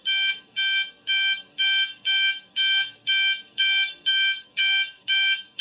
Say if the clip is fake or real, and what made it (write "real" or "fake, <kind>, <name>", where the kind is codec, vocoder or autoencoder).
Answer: fake, codec, SNAC